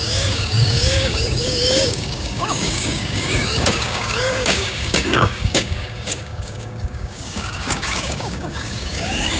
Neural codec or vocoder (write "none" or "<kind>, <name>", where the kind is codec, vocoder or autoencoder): codec, DAC